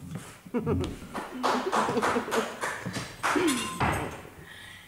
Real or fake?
real